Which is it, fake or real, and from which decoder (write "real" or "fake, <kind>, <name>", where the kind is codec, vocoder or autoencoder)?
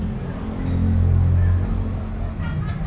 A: real